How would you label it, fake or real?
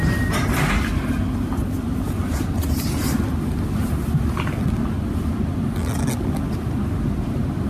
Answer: real